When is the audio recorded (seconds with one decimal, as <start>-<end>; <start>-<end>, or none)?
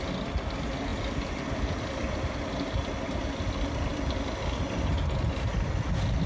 0.0-6.3